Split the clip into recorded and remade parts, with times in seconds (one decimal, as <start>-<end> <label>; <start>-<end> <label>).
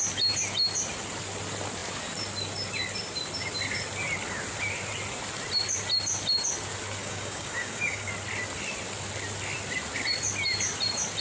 0.0-7.0 recorded; 7.0-8.1 remade; 8.1-11.2 recorded